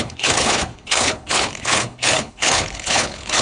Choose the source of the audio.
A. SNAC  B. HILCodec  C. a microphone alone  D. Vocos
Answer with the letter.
B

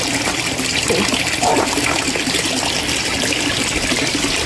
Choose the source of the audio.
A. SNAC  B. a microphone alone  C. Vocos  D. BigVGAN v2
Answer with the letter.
B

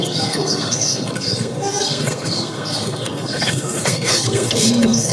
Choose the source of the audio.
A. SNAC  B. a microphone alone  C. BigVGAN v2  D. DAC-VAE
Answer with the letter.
A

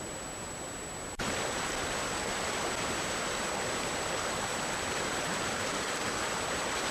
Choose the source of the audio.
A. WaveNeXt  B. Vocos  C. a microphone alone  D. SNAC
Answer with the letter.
C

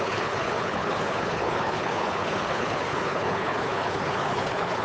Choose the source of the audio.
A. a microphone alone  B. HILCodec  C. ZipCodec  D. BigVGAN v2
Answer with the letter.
B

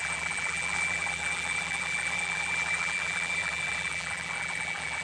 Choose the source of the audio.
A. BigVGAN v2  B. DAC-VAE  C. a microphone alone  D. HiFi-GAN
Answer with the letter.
A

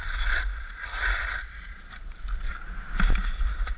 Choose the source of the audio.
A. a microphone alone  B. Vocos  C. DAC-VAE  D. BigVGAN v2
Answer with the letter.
A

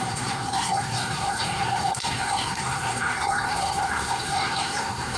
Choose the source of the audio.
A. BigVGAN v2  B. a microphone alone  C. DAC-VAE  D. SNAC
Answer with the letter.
D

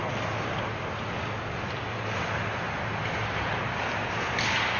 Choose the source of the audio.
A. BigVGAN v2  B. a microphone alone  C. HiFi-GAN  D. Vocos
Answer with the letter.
B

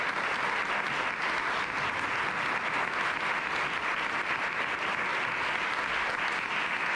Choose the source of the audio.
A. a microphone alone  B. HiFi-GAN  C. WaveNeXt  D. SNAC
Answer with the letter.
A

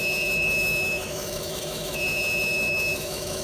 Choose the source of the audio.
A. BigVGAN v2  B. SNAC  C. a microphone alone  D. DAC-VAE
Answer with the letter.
D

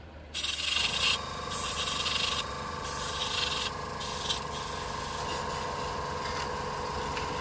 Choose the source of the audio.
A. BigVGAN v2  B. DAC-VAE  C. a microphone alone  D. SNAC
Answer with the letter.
C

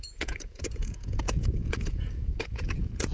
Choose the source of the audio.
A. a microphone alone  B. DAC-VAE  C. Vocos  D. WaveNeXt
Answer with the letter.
C